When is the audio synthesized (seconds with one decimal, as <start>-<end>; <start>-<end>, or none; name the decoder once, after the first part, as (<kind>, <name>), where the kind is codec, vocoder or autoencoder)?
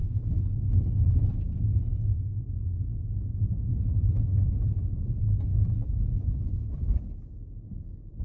none